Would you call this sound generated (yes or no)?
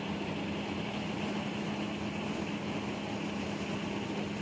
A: no